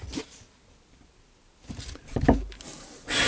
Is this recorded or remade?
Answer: recorded